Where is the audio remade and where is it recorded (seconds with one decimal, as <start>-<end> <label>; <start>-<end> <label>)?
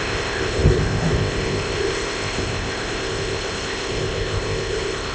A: 0.0-5.1 remade